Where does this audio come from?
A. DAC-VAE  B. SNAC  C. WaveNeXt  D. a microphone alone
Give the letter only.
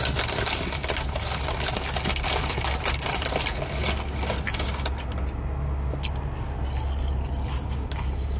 D